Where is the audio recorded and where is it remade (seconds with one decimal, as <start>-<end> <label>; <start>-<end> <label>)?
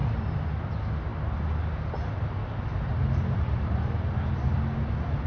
0.0-5.3 recorded